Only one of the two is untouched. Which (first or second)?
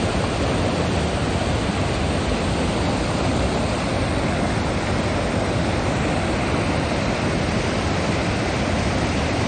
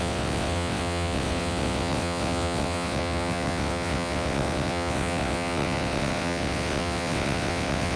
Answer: first